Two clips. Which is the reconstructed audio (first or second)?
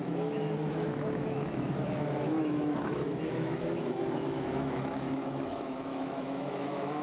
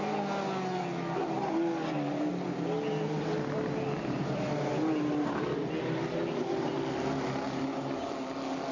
first